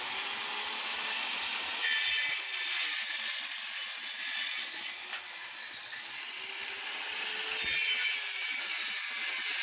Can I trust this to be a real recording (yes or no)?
yes